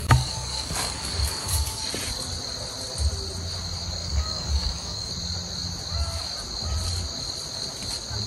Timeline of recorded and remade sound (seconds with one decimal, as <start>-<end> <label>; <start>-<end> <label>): 0.0-1.8 remade; 1.8-4.0 recorded; 4.0-5.1 remade; 5.1-8.3 recorded